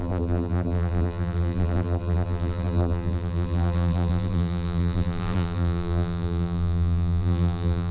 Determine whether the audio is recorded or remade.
remade